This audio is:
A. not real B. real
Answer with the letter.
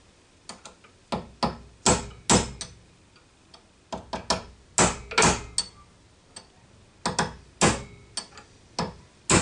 B